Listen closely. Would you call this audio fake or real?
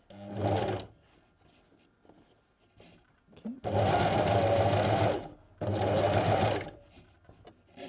real